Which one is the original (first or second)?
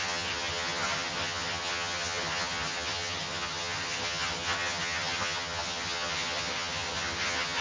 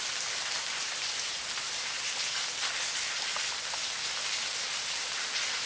second